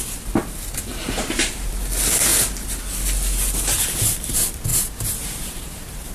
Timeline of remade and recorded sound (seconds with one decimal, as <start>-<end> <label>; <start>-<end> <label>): 0.0-0.9 recorded; 0.9-1.7 remade; 1.7-4.7 recorded; 4.7-6.1 remade